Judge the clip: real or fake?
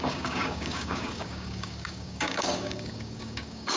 fake